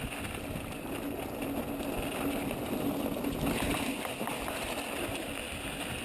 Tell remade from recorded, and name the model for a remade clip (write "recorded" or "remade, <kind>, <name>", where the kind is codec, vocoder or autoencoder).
recorded